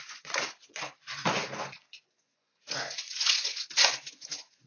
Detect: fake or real fake